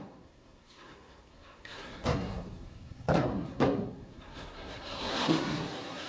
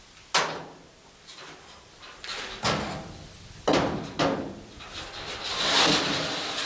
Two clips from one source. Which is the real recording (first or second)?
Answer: second